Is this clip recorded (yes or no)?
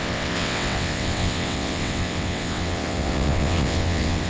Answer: no